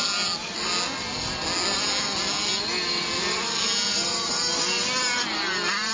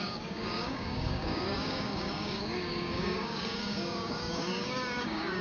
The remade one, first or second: second